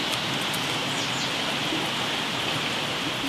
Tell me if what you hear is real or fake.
real